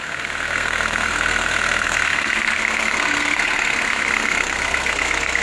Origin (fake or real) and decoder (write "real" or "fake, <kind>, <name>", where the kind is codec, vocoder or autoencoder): fake, codec, SNAC